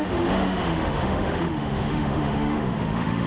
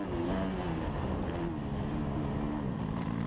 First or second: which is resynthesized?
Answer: first